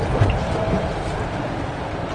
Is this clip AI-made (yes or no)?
no